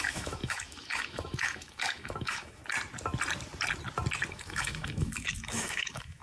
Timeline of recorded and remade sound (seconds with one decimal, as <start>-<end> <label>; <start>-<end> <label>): 0.0-2.6 remade; 2.6-4.3 recorded; 4.3-6.2 remade